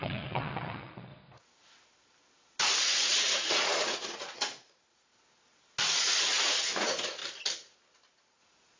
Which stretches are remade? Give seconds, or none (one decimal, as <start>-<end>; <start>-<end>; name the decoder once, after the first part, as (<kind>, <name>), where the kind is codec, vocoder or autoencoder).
0.0-1.1 (vocoder, Vocos); 2.8-5.1; 6.2-7.2; 8.3-8.8